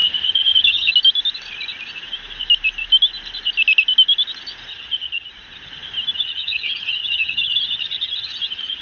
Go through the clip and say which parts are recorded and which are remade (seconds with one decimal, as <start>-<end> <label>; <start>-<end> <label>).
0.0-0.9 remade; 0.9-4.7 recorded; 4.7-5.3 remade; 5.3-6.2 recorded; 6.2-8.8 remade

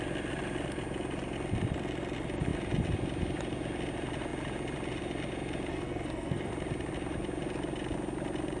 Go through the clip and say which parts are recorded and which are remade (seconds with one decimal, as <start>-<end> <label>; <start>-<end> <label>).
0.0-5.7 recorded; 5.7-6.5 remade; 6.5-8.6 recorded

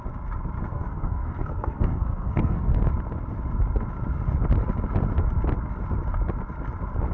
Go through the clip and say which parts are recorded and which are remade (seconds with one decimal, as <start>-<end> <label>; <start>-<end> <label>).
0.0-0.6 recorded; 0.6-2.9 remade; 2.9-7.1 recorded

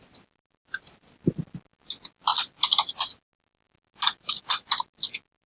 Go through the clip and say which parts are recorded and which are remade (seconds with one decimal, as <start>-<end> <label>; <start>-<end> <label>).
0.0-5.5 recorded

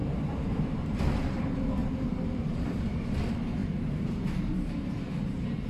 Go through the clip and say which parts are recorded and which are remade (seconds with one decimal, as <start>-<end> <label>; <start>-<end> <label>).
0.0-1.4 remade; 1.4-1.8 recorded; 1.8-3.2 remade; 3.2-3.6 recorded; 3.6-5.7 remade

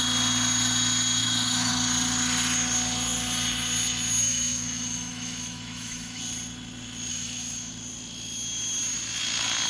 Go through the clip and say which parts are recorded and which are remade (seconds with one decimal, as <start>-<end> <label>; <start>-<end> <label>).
0.0-1.2 recorded; 1.2-1.7 remade; 1.7-4.2 recorded; 4.2-6.2 remade; 6.2-7.1 recorded; 7.1-7.7 remade; 7.7-9.7 recorded

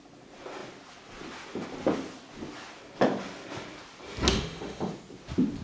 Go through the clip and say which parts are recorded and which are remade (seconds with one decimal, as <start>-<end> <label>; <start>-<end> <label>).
0.0-4.3 recorded; 4.3-4.9 remade; 4.9-5.6 recorded

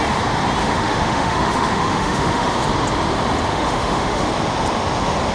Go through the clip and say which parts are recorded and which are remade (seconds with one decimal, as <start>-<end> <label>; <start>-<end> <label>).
0.0-0.6 recorded; 0.6-2.5 remade; 2.5-3.5 recorded; 3.5-4.3 remade; 4.3-5.3 recorded